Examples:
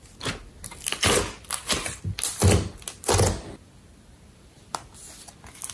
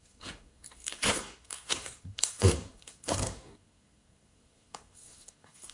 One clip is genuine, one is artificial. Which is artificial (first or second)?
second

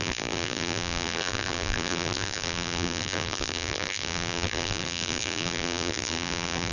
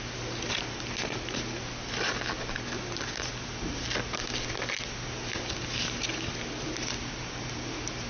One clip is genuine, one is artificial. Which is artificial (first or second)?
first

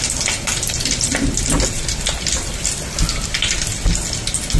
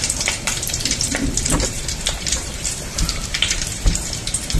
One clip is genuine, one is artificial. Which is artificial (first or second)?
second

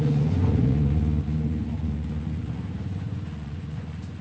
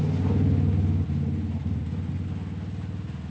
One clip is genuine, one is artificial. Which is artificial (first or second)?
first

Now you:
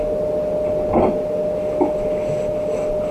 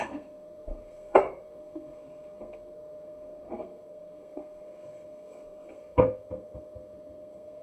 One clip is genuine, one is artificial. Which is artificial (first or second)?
second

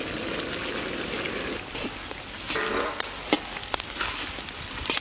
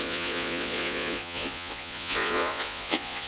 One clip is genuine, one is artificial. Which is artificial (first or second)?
second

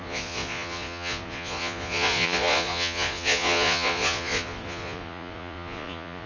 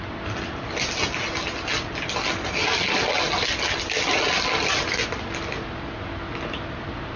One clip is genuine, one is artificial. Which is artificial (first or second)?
first